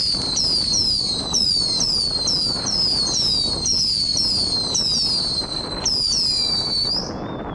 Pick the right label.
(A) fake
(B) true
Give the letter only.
B